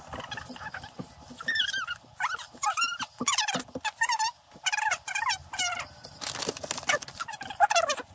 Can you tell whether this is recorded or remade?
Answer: recorded